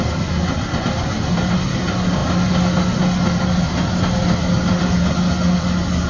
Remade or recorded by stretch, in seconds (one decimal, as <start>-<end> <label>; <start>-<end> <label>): 0.0-6.1 recorded